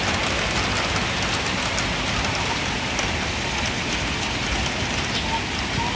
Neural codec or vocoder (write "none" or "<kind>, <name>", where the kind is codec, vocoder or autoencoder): none